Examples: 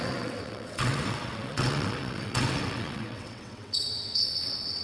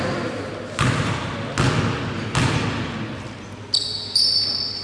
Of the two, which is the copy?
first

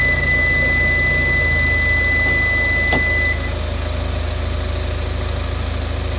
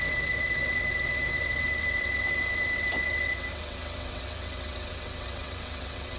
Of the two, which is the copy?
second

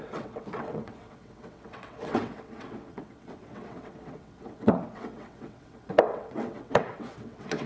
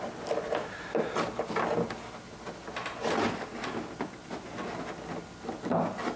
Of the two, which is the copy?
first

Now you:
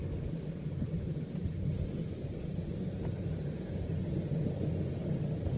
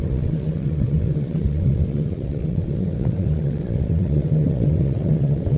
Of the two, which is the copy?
second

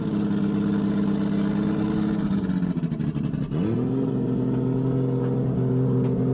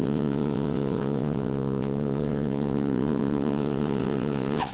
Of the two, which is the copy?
second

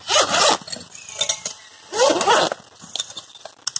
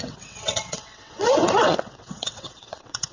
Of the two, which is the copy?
second